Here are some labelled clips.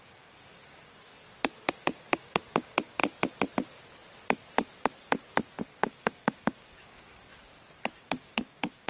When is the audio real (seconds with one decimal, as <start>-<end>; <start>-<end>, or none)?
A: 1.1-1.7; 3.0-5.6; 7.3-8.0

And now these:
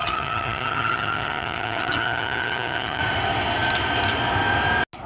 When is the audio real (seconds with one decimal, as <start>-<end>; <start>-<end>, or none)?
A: 3.0-5.1

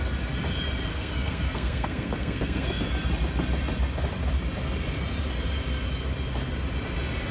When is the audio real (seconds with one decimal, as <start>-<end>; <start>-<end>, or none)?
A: 0.0-0.9; 2.8-7.3

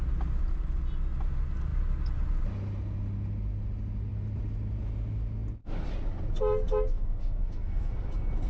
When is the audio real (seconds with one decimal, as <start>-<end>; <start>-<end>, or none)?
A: 0.0-6.9; 7.9-8.5

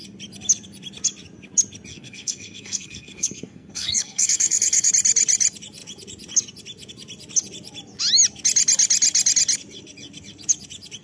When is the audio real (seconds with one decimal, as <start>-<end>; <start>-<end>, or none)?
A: 0.0-1.9; 4.9-11.0

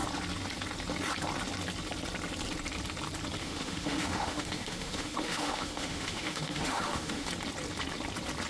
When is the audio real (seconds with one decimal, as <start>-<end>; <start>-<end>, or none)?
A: 0.0-3.4; 7.3-8.5